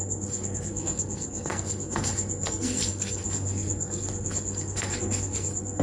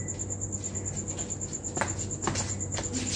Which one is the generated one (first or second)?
first